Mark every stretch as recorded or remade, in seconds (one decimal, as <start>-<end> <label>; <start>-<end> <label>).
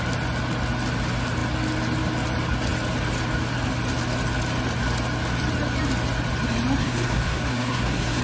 0.0-6.8 recorded; 6.8-8.2 remade